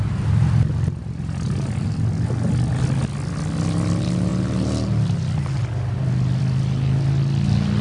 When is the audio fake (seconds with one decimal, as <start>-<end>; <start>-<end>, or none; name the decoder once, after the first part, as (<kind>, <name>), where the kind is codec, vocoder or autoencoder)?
none